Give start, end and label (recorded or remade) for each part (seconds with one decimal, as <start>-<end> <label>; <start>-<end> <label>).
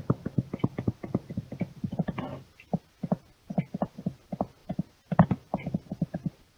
0.0-6.6 recorded